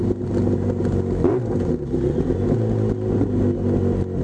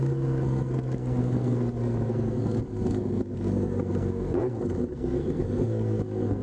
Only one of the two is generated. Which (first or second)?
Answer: second